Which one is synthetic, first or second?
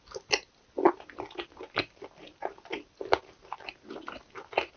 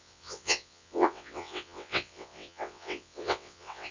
second